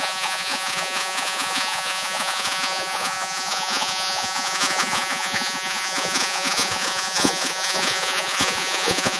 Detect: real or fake fake